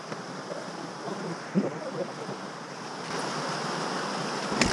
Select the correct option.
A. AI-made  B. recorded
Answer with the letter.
B